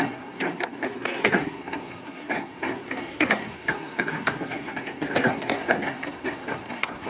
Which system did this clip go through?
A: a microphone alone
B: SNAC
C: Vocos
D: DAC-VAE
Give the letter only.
B